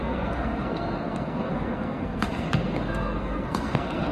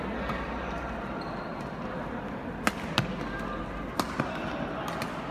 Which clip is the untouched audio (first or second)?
second